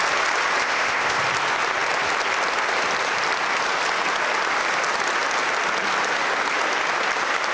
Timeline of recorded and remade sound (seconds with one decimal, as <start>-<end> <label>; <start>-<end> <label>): 0.0-0.6 recorded; 0.6-1.2 remade; 1.2-7.5 recorded